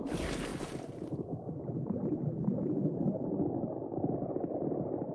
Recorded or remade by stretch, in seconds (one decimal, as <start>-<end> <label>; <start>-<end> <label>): 0.0-5.1 recorded